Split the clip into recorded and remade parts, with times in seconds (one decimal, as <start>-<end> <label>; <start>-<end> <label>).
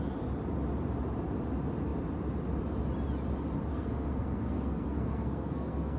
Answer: 0.0-3.7 recorded; 3.7-6.0 remade